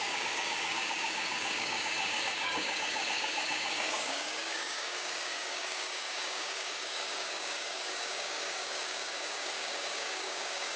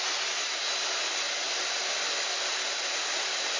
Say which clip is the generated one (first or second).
first